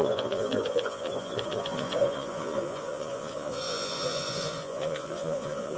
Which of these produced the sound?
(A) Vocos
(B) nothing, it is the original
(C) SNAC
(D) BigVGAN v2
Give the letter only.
A